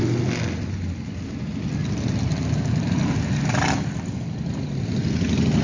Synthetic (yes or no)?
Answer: no